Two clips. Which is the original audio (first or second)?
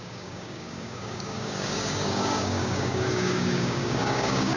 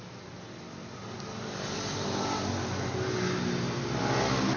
second